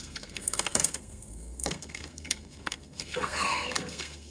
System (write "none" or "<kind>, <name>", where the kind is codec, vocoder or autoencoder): codec, SNAC